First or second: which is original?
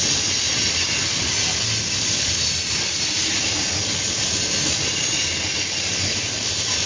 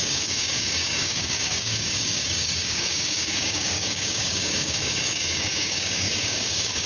first